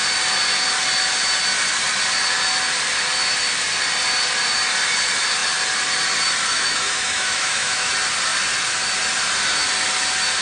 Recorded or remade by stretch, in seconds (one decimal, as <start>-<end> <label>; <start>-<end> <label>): 0.0-6.5 recorded; 6.5-7.9 remade; 7.9-10.4 recorded

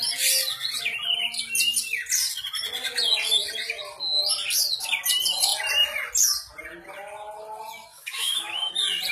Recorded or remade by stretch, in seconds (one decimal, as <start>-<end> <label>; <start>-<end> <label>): 0.0-7.9 recorded; 7.9-8.7 remade; 8.7-9.1 recorded

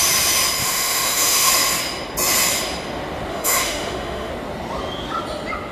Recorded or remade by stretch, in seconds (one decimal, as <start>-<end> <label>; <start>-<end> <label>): 0.0-0.6 recorded; 0.6-1.5 remade; 1.5-3.3 recorded; 3.3-4.3 remade; 4.3-5.7 recorded